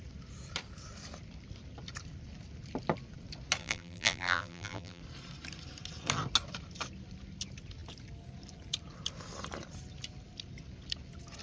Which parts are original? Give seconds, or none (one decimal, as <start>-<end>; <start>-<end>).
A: 0.0-3.6; 5.0-11.4